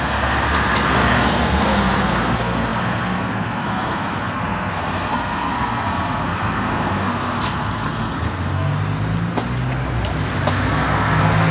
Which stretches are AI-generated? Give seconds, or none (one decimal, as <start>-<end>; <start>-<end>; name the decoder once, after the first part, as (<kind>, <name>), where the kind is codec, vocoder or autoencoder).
0.0-8.7 (codec, SNAC); 10.5-11.5